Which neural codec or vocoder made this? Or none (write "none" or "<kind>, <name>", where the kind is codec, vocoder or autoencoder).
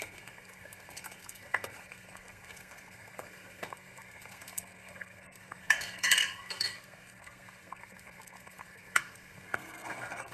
codec, SNAC